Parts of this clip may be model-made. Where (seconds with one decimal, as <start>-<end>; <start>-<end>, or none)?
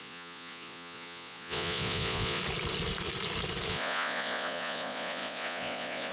0.0-2.4; 3.7-6.1